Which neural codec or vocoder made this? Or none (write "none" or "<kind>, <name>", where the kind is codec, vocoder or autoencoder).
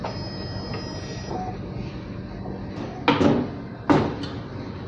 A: none